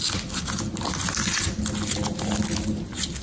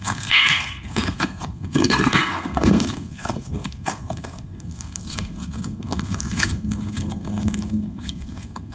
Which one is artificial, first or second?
second